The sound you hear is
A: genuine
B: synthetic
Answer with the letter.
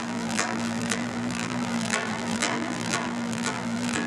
B